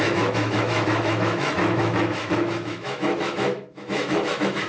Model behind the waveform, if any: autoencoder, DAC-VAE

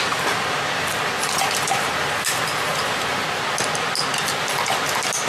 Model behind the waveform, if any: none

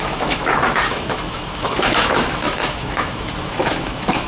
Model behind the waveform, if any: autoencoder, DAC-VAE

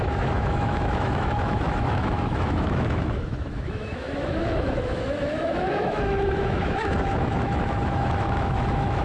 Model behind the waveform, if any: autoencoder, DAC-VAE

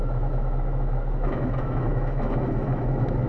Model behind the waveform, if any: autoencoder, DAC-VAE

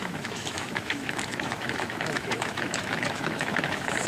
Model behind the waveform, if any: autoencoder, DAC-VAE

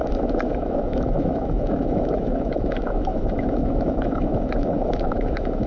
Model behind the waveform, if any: autoencoder, DAC-VAE